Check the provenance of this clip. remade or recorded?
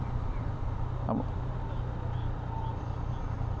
recorded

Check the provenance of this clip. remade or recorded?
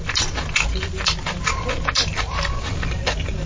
recorded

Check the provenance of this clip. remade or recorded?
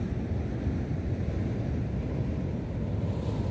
recorded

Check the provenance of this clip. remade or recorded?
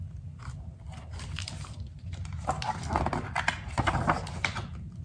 recorded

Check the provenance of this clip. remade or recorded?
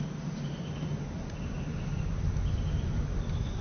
recorded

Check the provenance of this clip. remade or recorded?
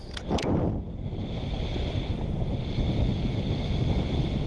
recorded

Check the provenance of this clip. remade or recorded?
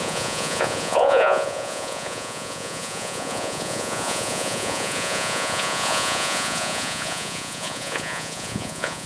remade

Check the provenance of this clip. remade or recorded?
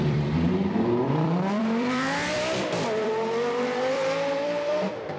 remade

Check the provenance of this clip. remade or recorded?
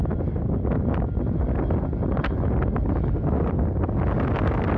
recorded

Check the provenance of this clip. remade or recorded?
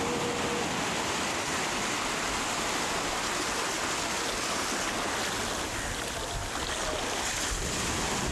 recorded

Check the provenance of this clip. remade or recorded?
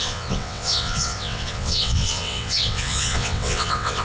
remade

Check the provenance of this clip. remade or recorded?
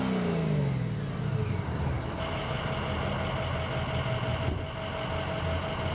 recorded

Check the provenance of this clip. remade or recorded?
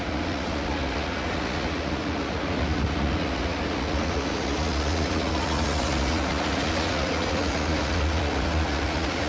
remade